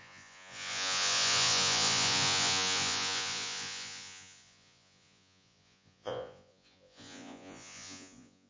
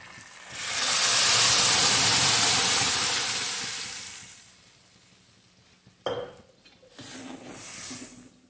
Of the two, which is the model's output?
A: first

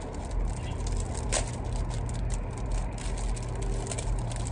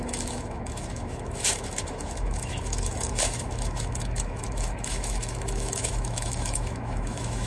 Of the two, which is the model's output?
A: second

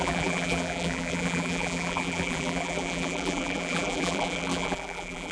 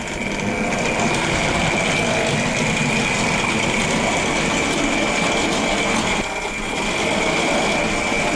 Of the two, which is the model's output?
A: first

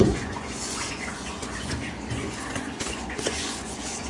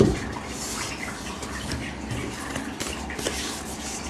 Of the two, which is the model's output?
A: first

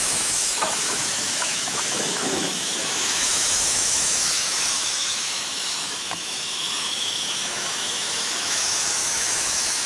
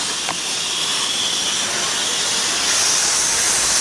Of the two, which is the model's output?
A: first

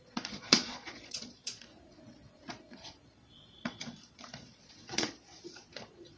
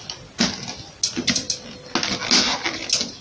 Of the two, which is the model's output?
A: first